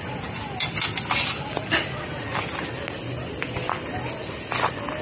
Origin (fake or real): real